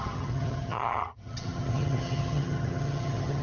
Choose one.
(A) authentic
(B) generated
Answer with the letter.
B